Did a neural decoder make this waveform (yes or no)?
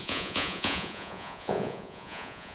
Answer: yes